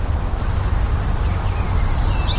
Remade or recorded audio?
recorded